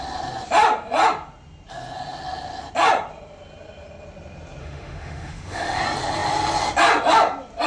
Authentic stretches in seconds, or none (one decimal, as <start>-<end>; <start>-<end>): 0.0-4.6; 5.8-7.7